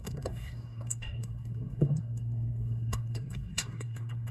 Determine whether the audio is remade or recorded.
remade